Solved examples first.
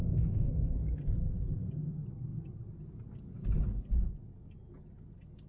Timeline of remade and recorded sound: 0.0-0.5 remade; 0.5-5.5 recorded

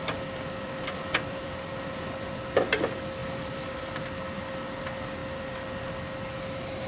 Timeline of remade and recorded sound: 0.0-2.3 remade; 2.3-3.2 recorded; 3.2-4.5 remade; 4.5-5.2 recorded; 5.2-5.9 remade; 5.9-6.9 recorded

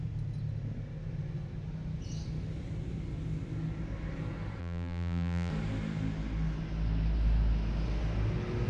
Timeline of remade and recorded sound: 0.0-4.6 recorded; 4.6-5.5 remade; 5.5-8.7 recorded

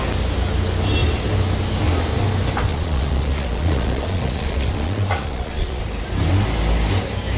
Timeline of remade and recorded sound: 0.0-2.7 recorded; 2.7-5.8 remade; 5.8-7.4 recorded

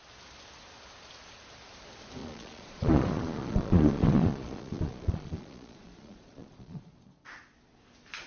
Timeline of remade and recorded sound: 0.0-2.2 recorded; 2.2-7.2 remade; 7.2-8.3 recorded

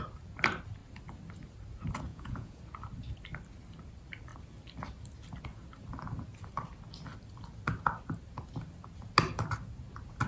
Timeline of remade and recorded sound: 0.0-2.1 recorded; 2.1-2.6 remade; 2.6-10.3 recorded

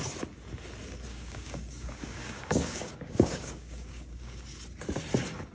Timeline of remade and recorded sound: 0.0-1.1 recorded; 1.1-4.4 remade; 4.4-5.5 recorded